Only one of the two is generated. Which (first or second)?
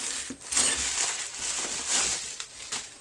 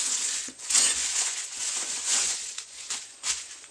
second